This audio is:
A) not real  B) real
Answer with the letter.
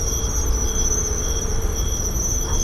B